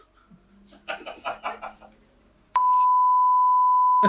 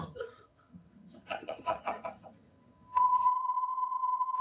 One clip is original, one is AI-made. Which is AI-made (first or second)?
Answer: second